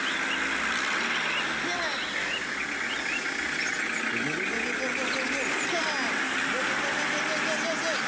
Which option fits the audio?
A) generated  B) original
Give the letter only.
B